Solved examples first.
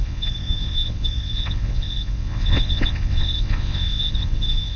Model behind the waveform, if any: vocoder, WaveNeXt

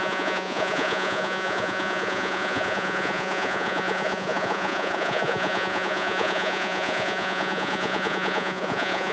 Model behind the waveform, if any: vocoder, Vocos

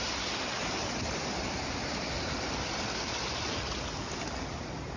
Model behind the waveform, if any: none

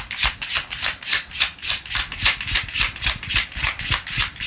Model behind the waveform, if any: none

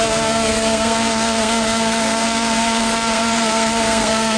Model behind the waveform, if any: codec, SNAC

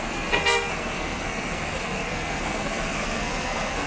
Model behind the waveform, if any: codec, SNAC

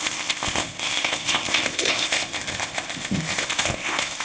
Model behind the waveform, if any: codec, ZipCodec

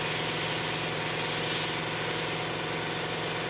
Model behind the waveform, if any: none